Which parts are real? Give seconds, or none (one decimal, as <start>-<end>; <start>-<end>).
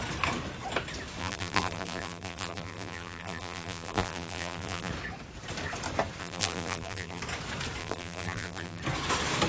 0.0-1.2; 4.9-6.2; 7.2-7.8; 8.8-9.5